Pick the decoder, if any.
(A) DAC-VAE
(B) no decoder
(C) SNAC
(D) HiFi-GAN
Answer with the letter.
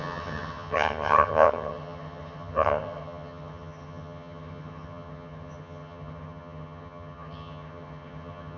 D